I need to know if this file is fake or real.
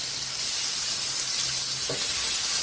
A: real